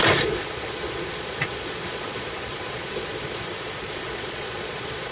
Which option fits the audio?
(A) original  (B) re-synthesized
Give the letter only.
B